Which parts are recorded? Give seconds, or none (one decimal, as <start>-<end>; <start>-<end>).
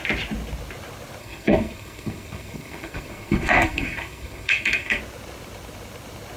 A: 0.0-1.2; 5.0-6.4